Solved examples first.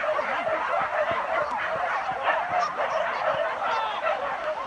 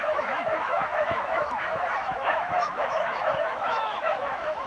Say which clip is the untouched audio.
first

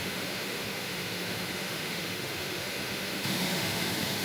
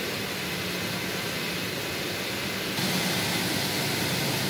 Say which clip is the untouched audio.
second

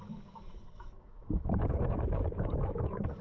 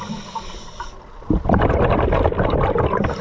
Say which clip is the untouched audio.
second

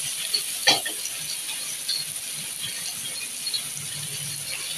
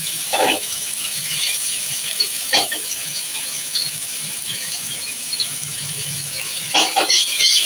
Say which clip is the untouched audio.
first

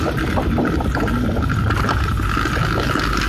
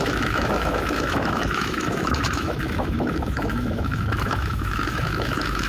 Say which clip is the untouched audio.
first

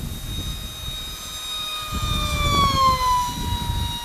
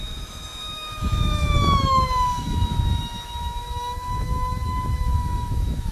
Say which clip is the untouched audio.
first